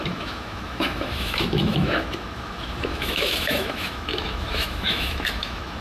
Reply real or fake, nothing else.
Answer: fake